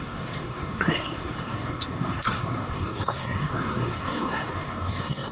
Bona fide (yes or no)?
no